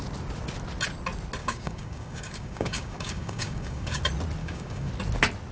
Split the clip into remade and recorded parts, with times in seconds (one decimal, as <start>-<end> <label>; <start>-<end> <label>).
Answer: 0.0-1.4 recorded; 1.4-4.0 remade; 4.0-4.4 recorded; 4.4-4.9 remade; 4.9-5.5 recorded